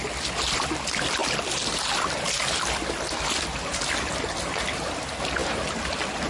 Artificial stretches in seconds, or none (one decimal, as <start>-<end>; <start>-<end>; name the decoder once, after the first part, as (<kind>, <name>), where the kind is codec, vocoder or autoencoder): none